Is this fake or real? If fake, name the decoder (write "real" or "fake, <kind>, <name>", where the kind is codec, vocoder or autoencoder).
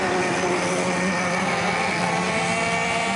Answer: real